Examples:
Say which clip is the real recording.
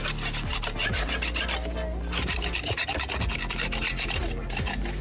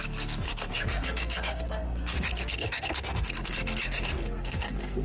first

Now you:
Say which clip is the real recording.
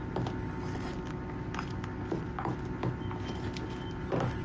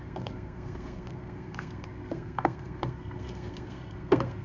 first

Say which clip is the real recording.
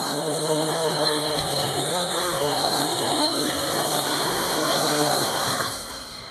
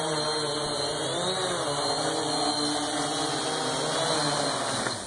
second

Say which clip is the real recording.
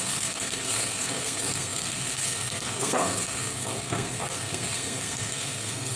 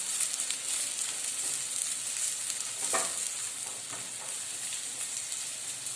second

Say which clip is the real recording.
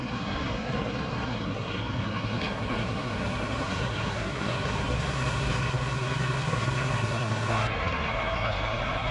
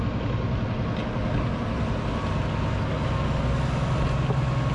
second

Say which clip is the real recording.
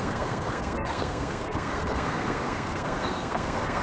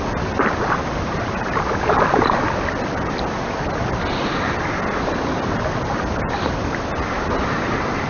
second